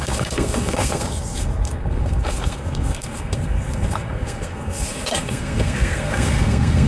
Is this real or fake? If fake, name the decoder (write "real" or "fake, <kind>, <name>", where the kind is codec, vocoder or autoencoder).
fake, codec, SNAC